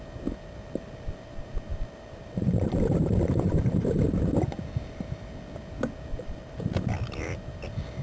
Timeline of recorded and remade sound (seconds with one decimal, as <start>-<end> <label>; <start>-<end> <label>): 0.0-0.6 recorded; 0.6-4.0 remade; 4.0-6.1 recorded; 6.1-6.9 remade; 6.9-8.0 recorded